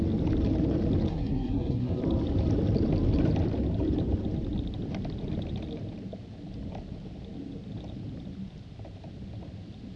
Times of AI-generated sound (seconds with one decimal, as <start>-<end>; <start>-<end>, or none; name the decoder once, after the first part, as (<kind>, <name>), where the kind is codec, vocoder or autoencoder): 1.1-2.0 (codec, SNAC)